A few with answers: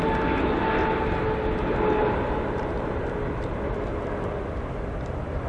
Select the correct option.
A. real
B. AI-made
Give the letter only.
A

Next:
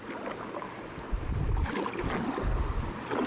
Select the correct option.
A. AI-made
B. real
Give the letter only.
B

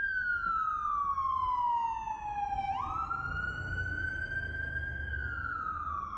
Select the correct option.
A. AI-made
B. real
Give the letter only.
B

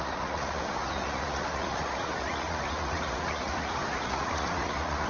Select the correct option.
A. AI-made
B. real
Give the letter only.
A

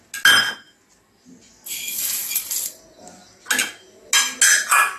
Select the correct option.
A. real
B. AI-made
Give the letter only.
A